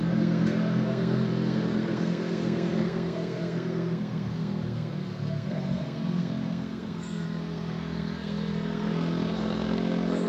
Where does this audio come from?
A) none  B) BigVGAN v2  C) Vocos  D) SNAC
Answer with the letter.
D